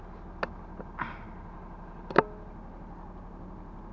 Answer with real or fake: real